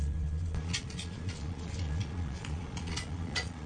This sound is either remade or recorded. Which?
remade